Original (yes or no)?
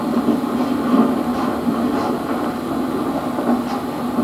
yes